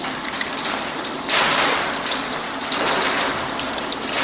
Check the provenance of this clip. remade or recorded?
remade